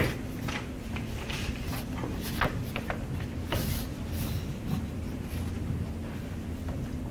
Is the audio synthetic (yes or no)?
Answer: no